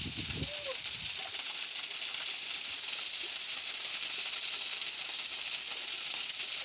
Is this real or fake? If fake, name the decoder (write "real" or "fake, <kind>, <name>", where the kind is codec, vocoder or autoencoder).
real